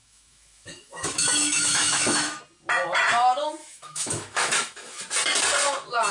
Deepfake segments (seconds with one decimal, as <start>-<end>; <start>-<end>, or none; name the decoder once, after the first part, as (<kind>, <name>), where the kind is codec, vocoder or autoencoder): 0.0-2.4 (autoencoder, DAC-VAE); 3.6-5.0